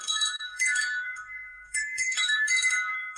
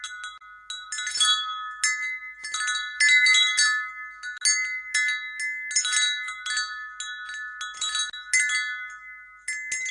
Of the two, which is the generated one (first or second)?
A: first